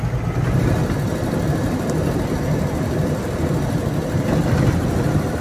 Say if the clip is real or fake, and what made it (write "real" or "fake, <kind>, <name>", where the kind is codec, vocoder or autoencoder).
real